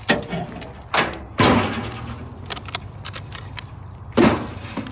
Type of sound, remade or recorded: recorded